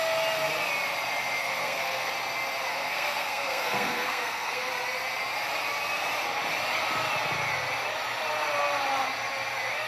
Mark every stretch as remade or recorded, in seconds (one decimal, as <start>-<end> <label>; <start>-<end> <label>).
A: 0.0-1.4 recorded; 1.4-2.1 remade; 2.1-2.7 recorded; 2.7-4.7 remade; 4.7-9.9 recorded